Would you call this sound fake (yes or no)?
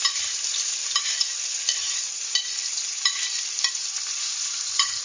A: yes